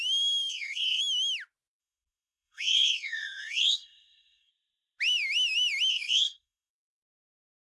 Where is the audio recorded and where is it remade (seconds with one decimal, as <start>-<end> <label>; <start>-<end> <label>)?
0.0-0.5 recorded; 0.5-1.0 remade; 1.0-1.8 recorded; 1.8-4.5 remade; 4.5-5.9 recorded; 5.9-6.7 remade; 6.7-7.8 recorded